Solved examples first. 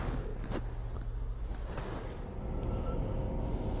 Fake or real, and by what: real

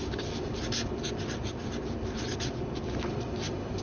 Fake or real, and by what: real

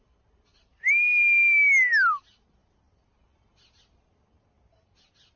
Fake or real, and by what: real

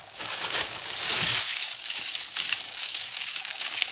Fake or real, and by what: fake, codec, DAC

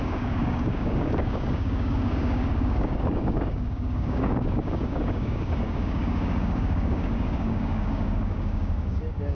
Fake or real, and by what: fake, codec, DAC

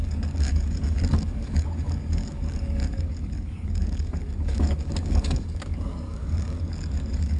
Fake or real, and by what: fake, codec, DAC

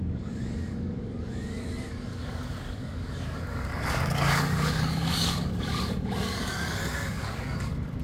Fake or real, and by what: fake, codec, DAC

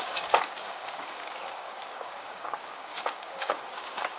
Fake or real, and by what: fake, codec, DAC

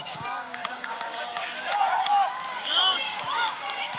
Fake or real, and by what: fake, codec, DAC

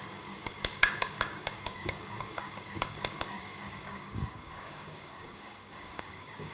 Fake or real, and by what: fake, codec, DAC